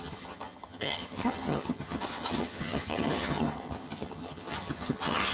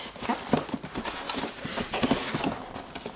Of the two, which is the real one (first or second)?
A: second